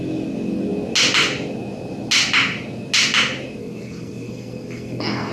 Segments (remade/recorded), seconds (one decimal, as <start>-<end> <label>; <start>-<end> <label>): 0.0-3.6 recorded; 3.6-5.3 remade